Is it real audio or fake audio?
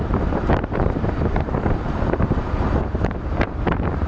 fake